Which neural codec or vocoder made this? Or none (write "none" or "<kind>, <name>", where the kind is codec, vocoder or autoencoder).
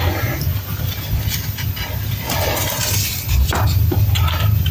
none